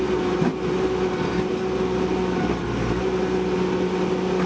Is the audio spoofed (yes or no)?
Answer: no